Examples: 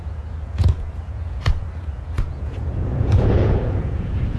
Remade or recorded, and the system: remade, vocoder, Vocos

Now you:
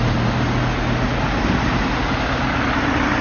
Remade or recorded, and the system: recorded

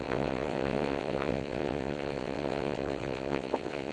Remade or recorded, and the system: remade, vocoder, WaveNeXt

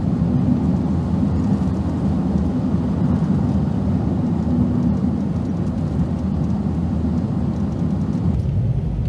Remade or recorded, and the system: recorded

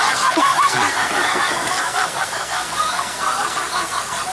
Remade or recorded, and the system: remade, codec, SNAC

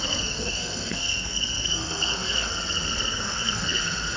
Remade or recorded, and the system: remade, codec, SNAC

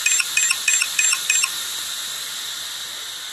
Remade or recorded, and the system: recorded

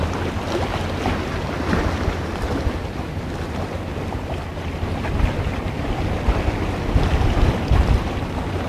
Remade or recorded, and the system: recorded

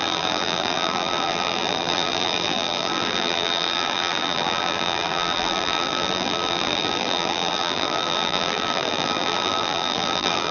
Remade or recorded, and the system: remade, vocoder, BigVGAN v2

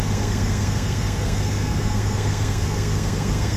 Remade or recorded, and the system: remade, codec, SNAC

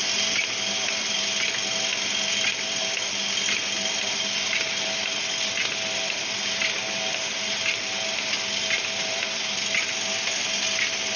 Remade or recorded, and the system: recorded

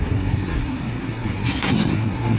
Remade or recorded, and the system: remade, codec, SNAC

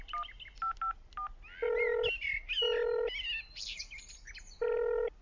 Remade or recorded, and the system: recorded